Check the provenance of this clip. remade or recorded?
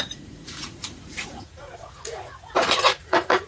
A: remade